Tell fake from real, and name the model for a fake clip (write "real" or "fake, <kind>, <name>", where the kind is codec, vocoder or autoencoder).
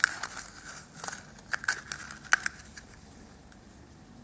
real